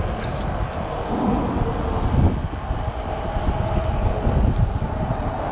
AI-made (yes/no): no